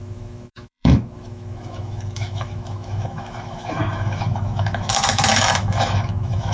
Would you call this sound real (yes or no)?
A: no